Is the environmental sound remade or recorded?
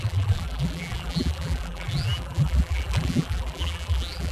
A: remade